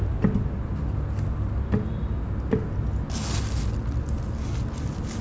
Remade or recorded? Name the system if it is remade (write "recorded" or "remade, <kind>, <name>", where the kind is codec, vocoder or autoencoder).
recorded